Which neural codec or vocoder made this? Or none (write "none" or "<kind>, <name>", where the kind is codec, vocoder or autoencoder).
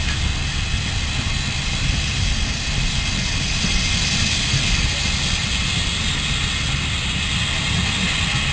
none